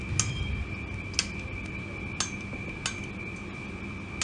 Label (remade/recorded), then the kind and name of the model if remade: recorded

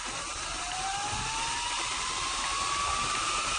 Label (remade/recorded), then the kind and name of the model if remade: recorded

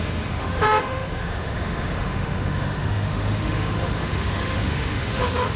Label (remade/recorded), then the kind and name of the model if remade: remade, autoencoder, DAC-VAE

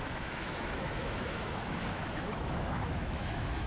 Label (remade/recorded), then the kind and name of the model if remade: remade, autoencoder, DAC-VAE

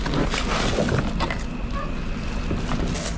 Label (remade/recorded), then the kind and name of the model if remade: recorded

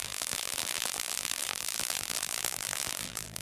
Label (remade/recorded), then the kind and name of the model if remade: remade, vocoder, BigVGAN v2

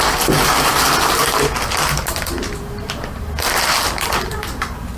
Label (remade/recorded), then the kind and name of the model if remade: recorded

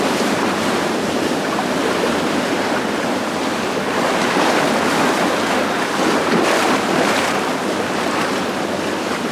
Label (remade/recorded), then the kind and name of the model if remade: recorded